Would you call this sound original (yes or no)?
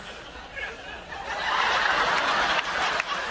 yes